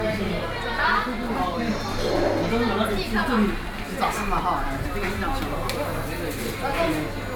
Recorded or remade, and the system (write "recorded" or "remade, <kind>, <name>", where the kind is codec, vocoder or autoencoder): recorded